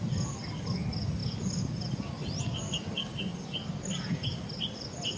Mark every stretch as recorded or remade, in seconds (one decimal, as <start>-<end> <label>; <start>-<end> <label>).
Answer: 0.0-5.2 recorded